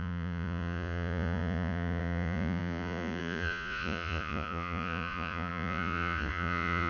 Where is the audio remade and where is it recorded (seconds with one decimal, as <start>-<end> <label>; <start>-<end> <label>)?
0.0-6.9 remade